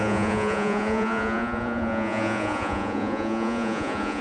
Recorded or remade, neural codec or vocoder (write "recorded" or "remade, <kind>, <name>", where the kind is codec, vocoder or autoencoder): remade, vocoder, Vocos